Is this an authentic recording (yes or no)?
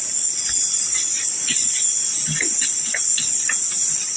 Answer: yes